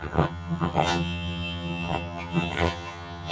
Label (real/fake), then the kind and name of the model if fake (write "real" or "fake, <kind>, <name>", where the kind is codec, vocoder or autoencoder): fake, vocoder, HiFi-GAN